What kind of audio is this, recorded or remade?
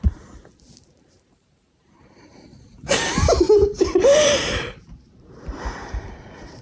remade